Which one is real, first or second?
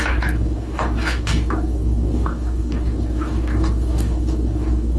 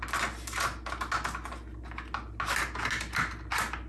second